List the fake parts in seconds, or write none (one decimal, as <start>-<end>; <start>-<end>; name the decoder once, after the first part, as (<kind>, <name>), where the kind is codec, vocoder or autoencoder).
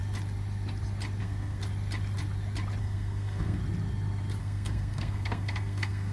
1.2-1.6 (codec, SNAC); 2.8-3.6; 4.4-6.1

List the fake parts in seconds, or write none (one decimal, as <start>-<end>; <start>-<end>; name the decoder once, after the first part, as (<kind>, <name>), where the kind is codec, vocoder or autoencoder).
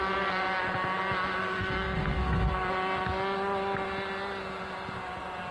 1.4-2.7 (codec, SNAC)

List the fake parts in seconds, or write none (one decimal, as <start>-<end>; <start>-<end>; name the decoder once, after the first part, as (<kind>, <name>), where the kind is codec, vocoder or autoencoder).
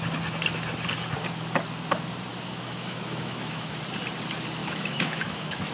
2.3-3.8 (autoencoder, DAC-VAE); 4.6-5.7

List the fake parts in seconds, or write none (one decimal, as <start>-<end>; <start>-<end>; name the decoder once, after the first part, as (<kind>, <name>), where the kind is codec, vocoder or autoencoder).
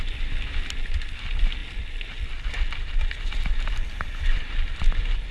none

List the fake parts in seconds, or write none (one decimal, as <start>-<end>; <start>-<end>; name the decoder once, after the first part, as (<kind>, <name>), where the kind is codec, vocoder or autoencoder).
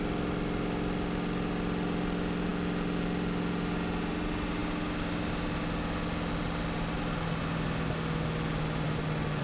none